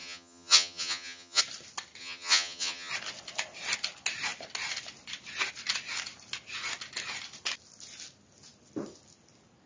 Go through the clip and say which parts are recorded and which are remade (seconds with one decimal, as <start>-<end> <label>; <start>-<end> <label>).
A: 0.0-1.4 remade; 1.4-2.0 recorded; 2.0-2.9 remade; 2.9-9.7 recorded